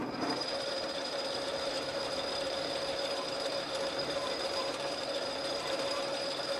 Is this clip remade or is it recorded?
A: remade